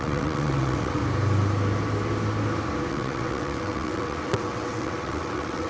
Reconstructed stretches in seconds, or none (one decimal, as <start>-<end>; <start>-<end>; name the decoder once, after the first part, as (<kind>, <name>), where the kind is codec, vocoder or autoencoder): 0.0-1.0 (vocoder, WaveNeXt); 2.9-5.7